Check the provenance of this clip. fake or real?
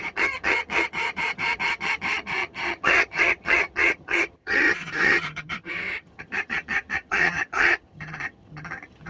fake